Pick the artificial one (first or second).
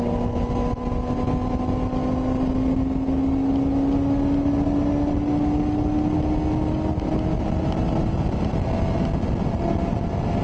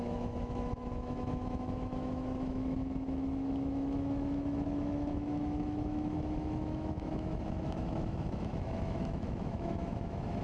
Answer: second